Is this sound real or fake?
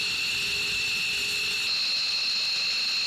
real